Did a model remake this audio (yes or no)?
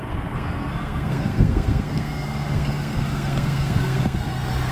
yes